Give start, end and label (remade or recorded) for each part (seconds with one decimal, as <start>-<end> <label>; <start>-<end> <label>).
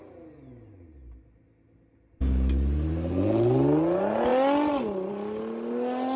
0.0-6.2 recorded